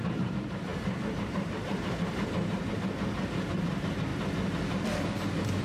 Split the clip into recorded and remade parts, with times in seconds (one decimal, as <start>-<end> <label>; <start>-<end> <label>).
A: 0.0-4.1 remade; 4.1-5.6 recorded